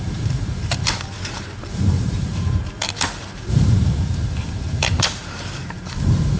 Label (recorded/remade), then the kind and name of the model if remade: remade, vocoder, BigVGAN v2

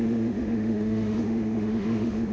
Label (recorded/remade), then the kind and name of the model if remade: remade, autoencoder, DAC-VAE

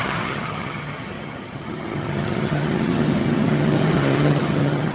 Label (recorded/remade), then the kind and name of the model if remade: remade, vocoder, HiFi-GAN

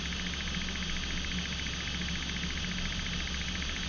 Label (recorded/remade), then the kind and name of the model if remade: recorded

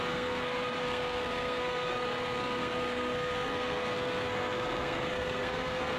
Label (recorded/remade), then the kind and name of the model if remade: remade, codec, SNAC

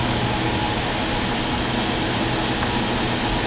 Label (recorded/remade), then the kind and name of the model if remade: recorded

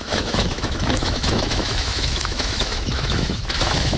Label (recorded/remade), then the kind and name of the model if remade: remade, autoencoder, DAC-VAE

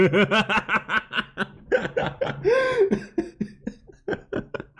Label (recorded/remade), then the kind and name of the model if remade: remade, vocoder, BigVGAN v2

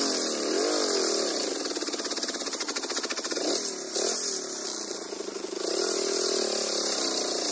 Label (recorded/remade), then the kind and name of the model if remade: recorded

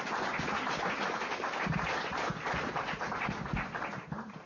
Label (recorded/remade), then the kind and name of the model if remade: remade, vocoder, BigVGAN v2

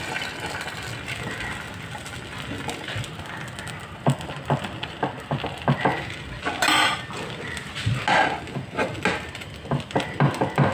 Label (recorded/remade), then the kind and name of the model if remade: recorded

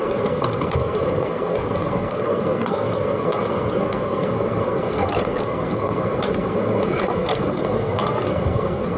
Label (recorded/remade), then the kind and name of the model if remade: remade, codec, SNAC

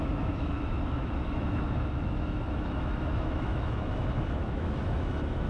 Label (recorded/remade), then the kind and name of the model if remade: remade, autoencoder, DAC-VAE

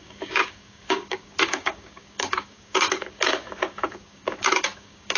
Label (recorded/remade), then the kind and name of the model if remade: remade, codec, DAC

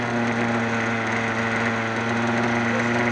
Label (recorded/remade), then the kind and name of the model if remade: recorded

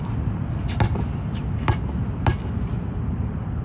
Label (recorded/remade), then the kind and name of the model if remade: recorded